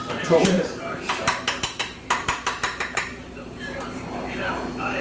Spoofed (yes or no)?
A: yes